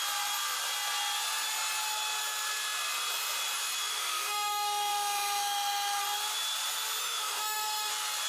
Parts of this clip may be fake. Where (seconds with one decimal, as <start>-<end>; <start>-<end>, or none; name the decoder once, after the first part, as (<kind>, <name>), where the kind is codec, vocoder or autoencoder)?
3.9-6.0 (autoencoder, DAC-VAE); 7.0-7.9